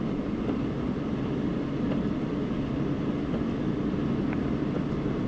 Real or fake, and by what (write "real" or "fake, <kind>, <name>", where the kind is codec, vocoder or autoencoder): real